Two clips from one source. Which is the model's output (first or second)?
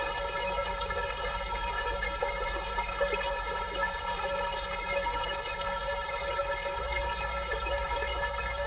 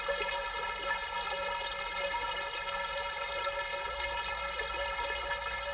first